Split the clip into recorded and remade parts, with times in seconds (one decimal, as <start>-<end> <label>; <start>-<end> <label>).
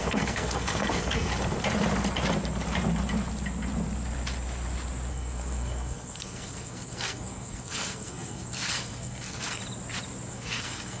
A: 0.0-1.3 remade; 1.3-5.1 recorded; 5.1-9.6 remade; 9.6-10.3 recorded; 10.3-11.0 remade